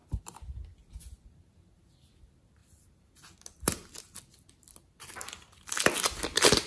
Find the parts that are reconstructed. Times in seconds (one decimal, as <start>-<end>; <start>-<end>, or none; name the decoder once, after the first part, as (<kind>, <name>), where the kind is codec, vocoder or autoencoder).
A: none